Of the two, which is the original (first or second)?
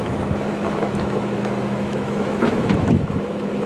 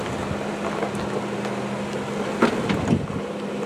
second